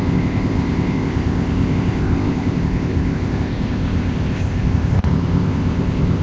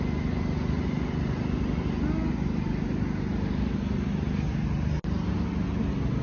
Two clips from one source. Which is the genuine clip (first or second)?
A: second